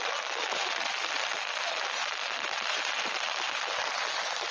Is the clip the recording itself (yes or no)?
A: yes